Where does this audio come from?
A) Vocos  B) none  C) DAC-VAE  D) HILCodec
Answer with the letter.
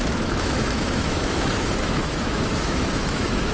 C